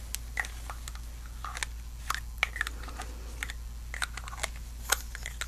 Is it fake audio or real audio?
real